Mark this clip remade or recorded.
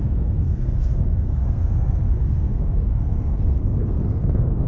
remade